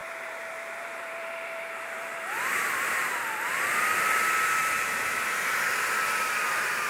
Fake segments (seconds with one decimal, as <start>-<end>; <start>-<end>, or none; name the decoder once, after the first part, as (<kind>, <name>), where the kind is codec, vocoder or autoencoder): 0.0-3.1 (vocoder, BigVGAN v2); 4.6-5.6